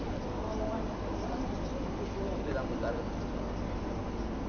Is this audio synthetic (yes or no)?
no